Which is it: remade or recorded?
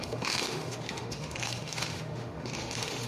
remade